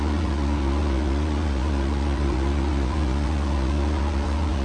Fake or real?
fake